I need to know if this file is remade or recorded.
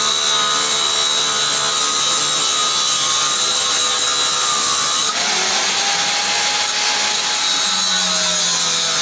recorded